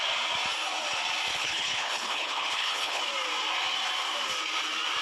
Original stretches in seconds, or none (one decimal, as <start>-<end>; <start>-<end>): 0.0-1.3; 3.0-5.0